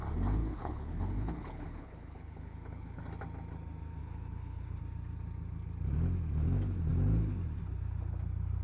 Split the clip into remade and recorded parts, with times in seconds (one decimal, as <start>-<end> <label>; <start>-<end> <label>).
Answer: 0.0-0.4 recorded; 0.4-3.0 remade; 3.0-4.0 recorded; 4.0-4.8 remade; 4.8-8.6 recorded